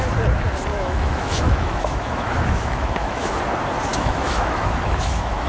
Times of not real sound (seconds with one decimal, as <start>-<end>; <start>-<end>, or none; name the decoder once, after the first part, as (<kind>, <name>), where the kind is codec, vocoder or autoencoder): 0.7-3.4 (autoencoder, DAC-VAE); 3.9-5.5